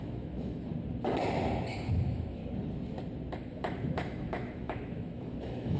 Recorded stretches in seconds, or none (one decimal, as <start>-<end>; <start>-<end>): 0.7-1.9; 2.4-3.4